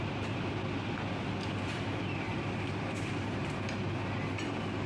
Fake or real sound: real